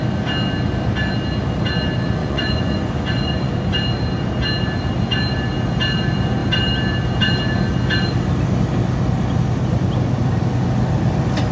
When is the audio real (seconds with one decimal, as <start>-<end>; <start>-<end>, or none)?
0.0-2.2; 3.5-11.5